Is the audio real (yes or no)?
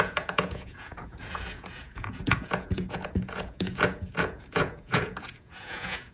no